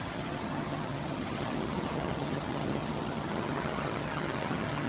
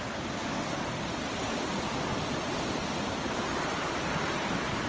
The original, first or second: second